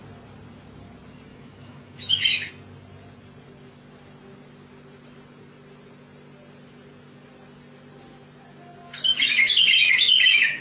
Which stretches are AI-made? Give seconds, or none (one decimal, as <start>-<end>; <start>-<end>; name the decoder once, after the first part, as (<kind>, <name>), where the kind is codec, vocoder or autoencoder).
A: 1.3-2.5 (autoencoder, DAC-VAE); 9.1-10.6